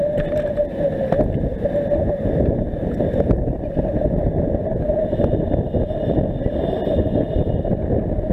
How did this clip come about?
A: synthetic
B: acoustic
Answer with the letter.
B